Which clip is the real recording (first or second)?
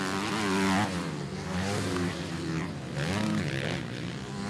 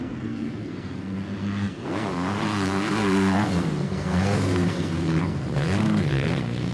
first